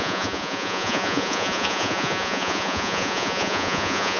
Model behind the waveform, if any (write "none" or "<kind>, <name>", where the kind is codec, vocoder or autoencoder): vocoder, Vocos